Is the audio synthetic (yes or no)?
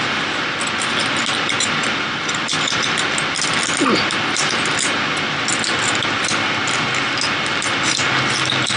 no